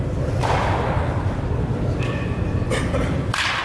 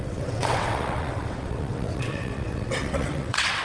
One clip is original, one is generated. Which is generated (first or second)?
second